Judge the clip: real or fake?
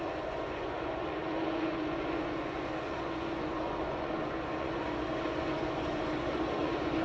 fake